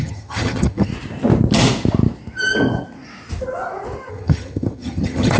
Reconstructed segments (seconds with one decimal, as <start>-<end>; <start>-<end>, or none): 0.0-0.9; 4.1-5.4